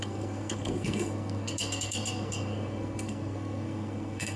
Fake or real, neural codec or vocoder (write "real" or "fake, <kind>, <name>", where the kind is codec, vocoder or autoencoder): fake, codec, SNAC